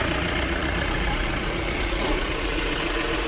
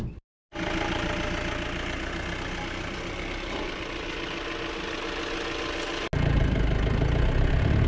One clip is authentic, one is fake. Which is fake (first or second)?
first